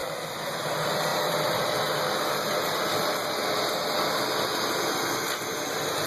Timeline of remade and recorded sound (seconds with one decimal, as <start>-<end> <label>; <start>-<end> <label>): 0.0-0.7 remade; 0.7-1.1 recorded; 1.1-4.8 remade; 4.8-6.1 recorded